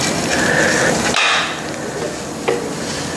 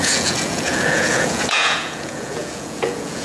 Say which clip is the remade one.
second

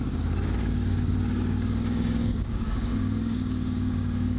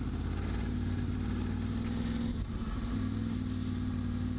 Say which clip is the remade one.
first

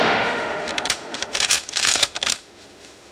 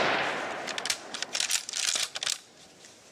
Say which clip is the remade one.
first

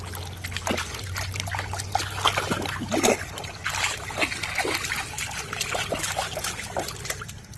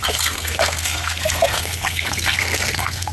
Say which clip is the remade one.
second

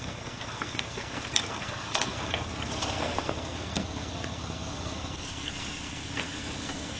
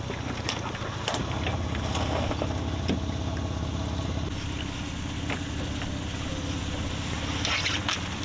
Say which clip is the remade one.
first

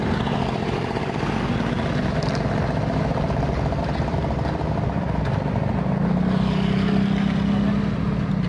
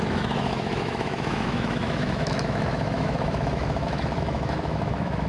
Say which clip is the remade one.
second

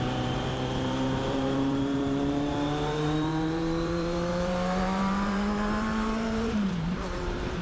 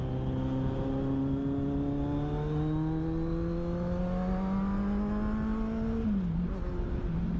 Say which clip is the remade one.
first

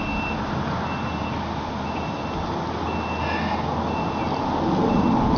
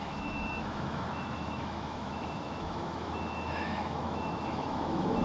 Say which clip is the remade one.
second